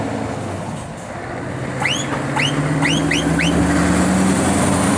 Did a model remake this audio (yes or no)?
no